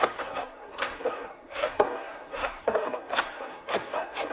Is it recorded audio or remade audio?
remade